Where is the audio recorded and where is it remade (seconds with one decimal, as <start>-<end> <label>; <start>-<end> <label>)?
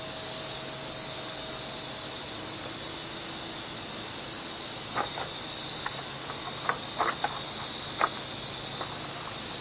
0.0-9.6 recorded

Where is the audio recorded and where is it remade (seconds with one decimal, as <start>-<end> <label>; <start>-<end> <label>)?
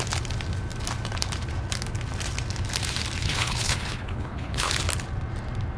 0.0-3.2 recorded; 3.2-4.7 remade; 4.7-5.8 recorded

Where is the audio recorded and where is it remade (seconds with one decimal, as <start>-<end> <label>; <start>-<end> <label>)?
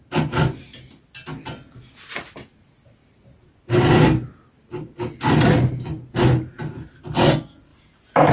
0.0-8.3 recorded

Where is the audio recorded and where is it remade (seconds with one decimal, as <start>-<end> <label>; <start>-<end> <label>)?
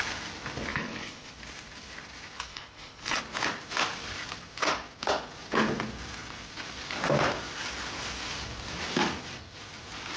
0.0-0.7 recorded; 0.7-1.3 remade; 1.3-2.5 recorded; 2.5-3.2 remade; 3.2-10.2 recorded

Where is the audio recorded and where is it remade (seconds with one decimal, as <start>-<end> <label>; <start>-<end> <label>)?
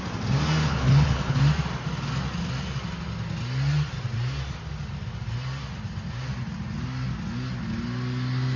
0.0-0.6 recorded; 0.6-1.4 remade; 1.4-8.6 recorded